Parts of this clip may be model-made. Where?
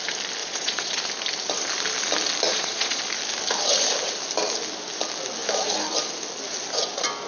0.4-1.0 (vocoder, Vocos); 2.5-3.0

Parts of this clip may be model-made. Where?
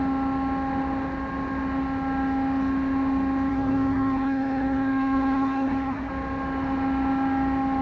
3.5-6.1 (codec, SNAC)